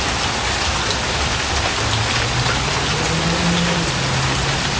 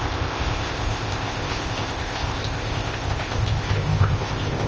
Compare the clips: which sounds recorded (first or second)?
first